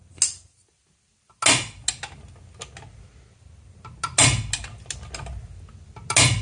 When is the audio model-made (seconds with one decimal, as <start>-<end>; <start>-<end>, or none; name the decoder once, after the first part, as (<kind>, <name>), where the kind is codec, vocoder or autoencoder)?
none